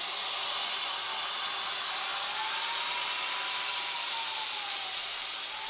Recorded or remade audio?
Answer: recorded